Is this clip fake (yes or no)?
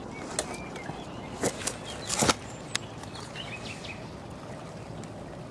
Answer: no